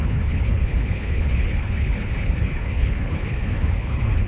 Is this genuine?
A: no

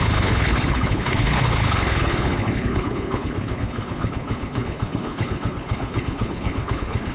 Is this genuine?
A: no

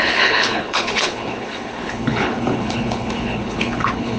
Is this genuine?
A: no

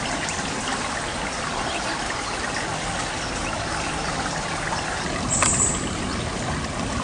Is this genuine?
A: yes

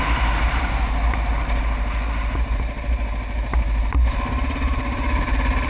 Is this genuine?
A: yes